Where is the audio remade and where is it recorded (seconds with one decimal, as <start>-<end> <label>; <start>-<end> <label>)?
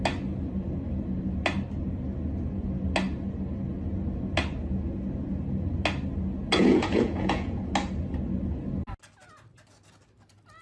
0.0-6.6 recorded; 6.6-7.6 remade; 7.6-10.6 recorded